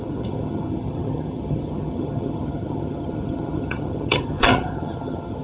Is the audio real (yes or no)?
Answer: no